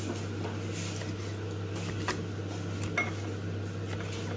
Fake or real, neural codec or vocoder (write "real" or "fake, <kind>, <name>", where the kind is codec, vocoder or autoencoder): real